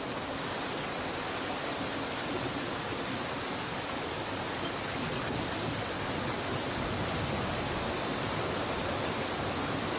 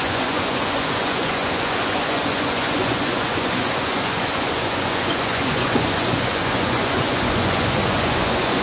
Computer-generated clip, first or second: second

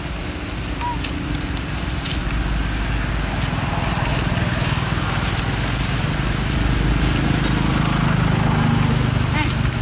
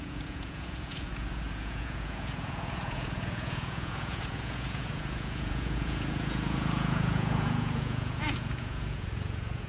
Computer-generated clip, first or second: second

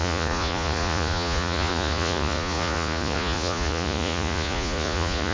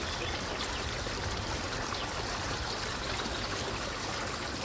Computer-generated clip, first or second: first